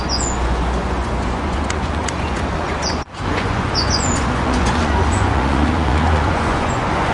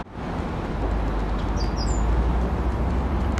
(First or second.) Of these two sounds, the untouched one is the second